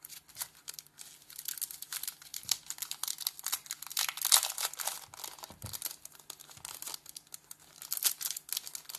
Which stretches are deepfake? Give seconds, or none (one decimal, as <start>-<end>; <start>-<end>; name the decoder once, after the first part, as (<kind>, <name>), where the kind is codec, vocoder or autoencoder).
none